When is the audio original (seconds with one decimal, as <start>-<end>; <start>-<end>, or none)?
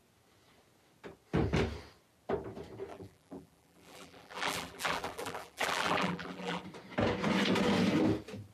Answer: 0.0-2.9; 6.6-8.5